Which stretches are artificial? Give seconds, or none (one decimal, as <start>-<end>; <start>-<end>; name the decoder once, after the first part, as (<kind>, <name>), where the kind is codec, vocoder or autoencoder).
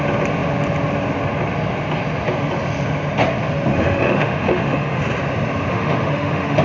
3.7-5.0 (autoencoder, DAC-VAE); 5.7-6.6